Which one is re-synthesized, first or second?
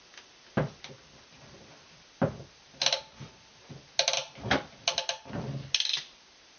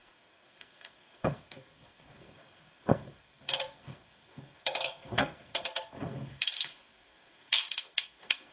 second